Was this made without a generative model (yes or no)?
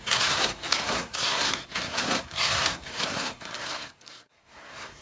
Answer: no